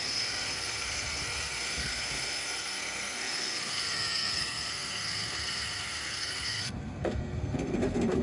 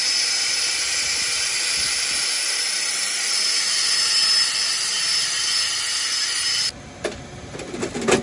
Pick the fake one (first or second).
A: first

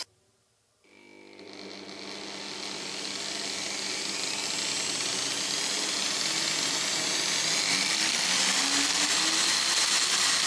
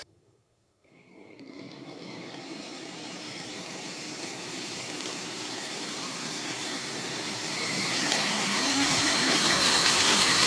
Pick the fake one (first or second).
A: second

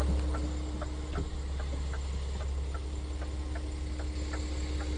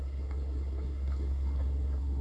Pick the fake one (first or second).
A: second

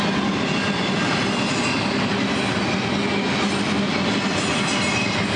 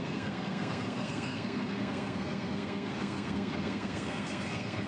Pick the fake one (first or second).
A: second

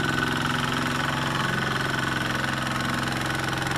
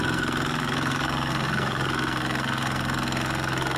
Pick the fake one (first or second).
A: second